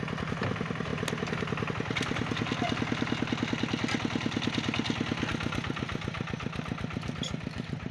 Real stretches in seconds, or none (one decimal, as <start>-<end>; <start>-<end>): 0.0-7.9